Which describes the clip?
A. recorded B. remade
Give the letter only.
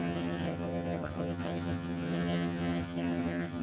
B